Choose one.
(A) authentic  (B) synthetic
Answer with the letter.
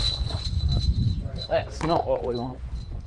B